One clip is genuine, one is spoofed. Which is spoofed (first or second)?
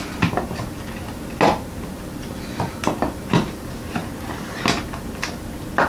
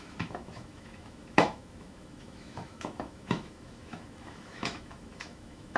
second